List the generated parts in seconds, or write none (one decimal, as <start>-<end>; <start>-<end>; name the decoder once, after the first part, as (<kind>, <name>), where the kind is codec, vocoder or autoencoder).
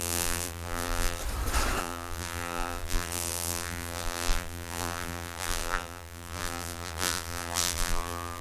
0.0-1.2 (vocoder, BigVGAN v2); 1.8-8.4